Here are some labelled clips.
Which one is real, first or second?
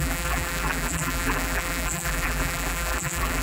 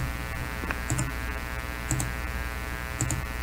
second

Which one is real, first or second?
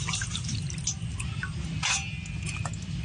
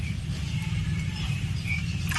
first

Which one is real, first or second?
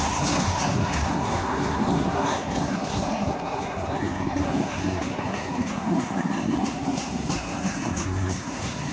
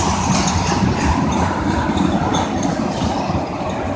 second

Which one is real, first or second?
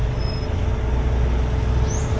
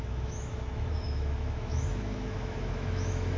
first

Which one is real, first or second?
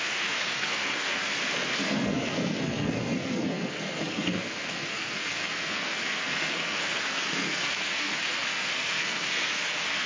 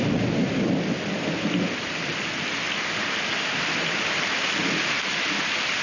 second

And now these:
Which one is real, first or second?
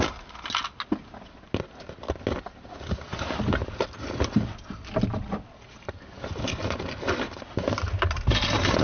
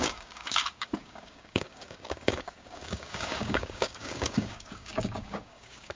first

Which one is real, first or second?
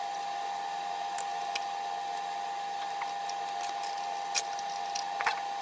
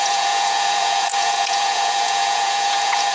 first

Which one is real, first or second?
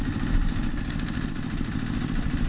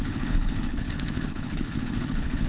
first